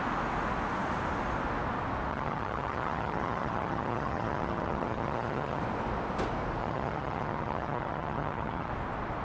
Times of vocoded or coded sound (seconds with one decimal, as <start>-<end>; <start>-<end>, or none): 2.1-5.6; 6.6-8.7